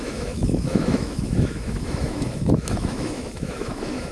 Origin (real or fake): fake